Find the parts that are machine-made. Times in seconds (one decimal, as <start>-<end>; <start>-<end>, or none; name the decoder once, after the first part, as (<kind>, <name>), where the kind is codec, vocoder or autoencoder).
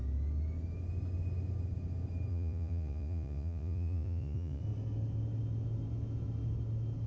2.3-4.6 (vocoder, Vocos)